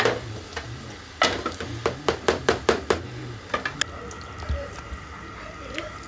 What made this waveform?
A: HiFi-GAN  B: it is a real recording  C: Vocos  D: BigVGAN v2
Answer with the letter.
B